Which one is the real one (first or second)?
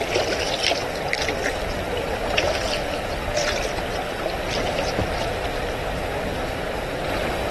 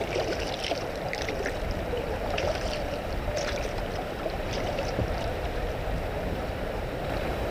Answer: first